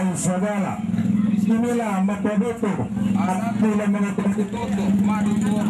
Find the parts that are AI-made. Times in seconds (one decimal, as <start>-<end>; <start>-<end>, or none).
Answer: 1.0-2.9